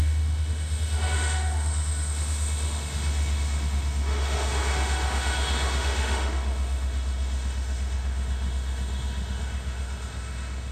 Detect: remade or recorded remade